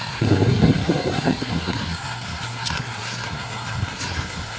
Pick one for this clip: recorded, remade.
remade